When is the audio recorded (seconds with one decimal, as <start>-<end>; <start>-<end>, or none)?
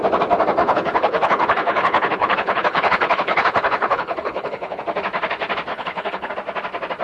0.0-0.6; 4.8-5.7; 6.3-7.0